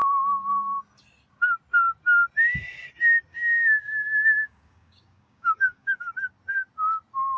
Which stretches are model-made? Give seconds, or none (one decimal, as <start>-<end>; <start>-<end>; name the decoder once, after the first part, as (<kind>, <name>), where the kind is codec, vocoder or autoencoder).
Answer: 0.0-0.8 (codec, DAC); 3.3-6.0